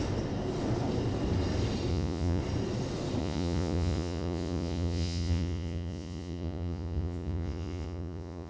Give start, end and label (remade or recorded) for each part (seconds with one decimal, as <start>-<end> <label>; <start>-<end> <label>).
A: 0.0-1.9 recorded; 1.9-2.4 remade; 2.4-3.2 recorded; 3.2-8.5 remade